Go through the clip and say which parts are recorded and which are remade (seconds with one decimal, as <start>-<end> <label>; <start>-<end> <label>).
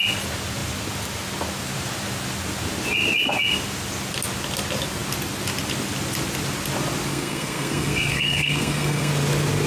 0.0-7.1 recorded; 7.1-9.1 remade; 9.1-9.7 recorded